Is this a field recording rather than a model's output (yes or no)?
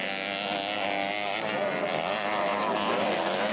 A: yes